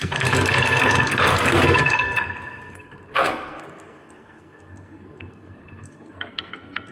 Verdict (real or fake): fake